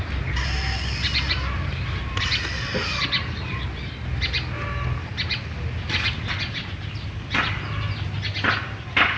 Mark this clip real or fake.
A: real